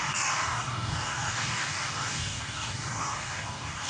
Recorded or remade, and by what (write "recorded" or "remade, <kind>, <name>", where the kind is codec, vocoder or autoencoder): remade, codec, DAC